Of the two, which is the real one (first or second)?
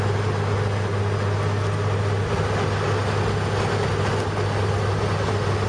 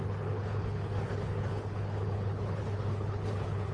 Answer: first